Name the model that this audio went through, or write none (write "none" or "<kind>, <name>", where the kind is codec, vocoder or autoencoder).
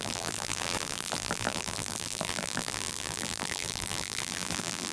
vocoder, BigVGAN v2